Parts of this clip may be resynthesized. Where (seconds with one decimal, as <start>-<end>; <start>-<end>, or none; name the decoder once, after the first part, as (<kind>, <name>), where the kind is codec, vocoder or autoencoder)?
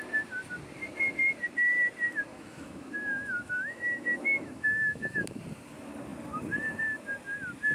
2.3-5.4 (autoencoder, DAC-VAE)